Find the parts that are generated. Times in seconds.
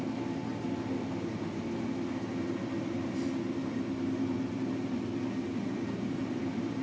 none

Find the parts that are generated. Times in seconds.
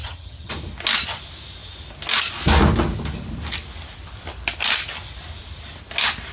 0.0-0.5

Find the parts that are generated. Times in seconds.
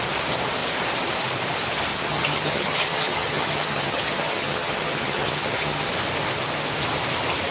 1.9-5.9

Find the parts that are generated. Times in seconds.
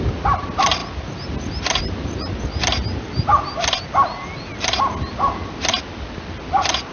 none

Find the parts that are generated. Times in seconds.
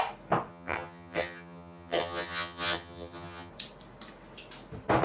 0.5-3.5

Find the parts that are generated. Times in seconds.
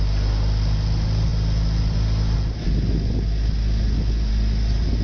none